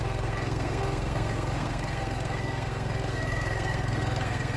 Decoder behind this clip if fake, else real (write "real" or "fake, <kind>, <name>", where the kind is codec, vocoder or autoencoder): fake, codec, SNAC